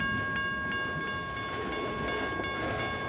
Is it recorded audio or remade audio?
recorded